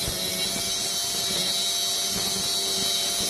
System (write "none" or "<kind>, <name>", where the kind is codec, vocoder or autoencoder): none